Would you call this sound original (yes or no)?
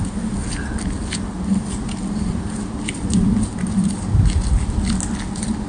yes